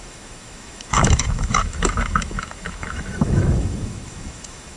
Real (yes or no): no